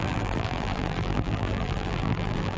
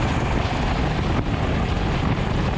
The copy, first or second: first